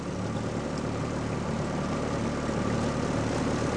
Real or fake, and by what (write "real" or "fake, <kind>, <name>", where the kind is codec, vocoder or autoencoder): real